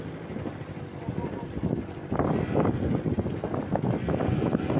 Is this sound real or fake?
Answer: real